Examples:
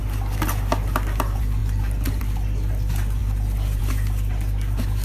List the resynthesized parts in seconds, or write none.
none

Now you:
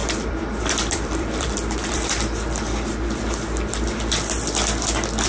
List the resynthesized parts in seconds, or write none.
0.0-3.2 (vocoder, BigVGAN v2)

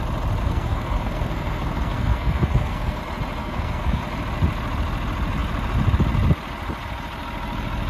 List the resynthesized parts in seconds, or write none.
0.4-3.0 (codec, SNAC); 3.4-4.0

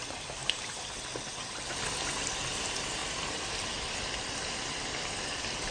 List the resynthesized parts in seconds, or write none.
0.4-1.0 (vocoder, BigVGAN v2)

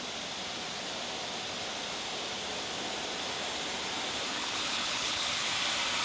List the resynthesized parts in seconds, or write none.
4.3-5.5 (codec, HILCodec)

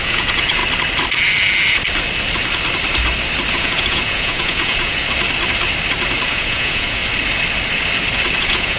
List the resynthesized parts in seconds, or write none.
0.0-0.6 (vocoder, Vocos); 3.5-5.0; 6.3-7.0; 8.4-8.8

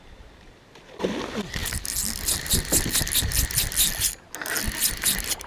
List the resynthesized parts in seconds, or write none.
none